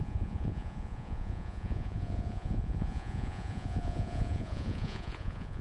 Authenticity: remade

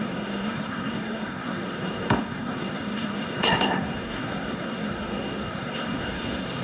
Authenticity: remade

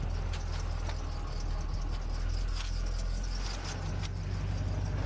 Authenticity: recorded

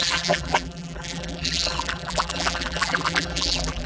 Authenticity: remade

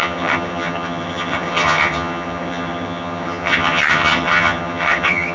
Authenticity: remade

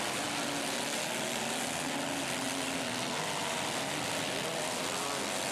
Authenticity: recorded